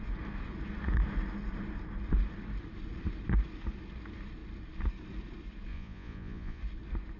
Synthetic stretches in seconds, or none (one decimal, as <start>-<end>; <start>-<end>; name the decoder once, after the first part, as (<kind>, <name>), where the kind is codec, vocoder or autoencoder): 5.7-6.6 (vocoder, Vocos)